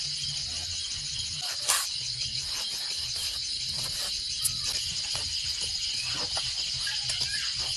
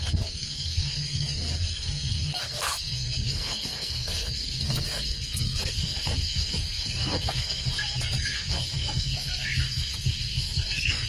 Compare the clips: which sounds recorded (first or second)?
first